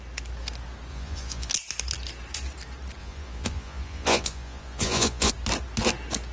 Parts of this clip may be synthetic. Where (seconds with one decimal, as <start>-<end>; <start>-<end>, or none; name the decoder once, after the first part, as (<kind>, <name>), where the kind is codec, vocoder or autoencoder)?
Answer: 0.9-1.5 (vocoder, Vocos); 3.0-5.3

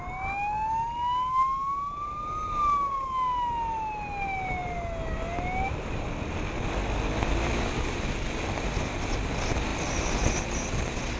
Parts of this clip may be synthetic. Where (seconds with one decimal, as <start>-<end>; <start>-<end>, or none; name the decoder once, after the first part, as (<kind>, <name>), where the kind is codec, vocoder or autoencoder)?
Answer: none